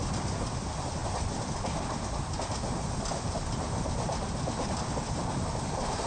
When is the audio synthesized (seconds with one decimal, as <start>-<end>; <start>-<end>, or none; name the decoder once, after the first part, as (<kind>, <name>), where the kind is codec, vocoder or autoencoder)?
none